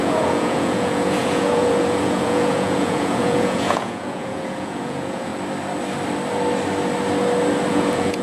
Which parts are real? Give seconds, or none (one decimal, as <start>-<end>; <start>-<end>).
5.3-7.7